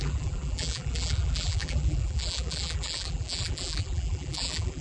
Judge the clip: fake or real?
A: fake